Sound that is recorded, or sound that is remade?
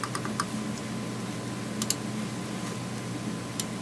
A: recorded